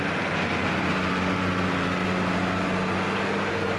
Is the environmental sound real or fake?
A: real